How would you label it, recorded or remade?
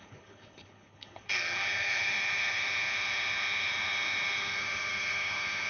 remade